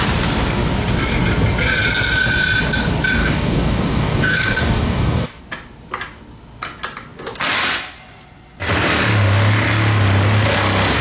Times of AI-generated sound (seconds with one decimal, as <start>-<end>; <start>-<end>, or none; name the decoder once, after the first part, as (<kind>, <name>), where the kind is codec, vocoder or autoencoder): 3.2-5.4 (codec, DAC)